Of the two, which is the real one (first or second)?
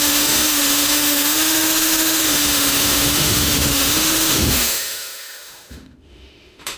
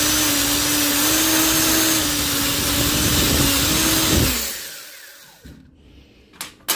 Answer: second